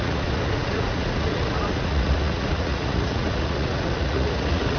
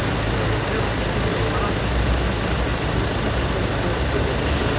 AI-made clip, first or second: first